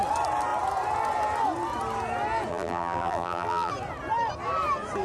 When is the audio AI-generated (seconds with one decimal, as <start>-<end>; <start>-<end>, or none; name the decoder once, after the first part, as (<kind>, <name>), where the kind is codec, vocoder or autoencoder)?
2.5-3.7 (vocoder, BigVGAN v2)